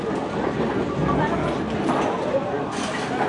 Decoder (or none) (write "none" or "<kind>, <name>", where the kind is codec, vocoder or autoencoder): none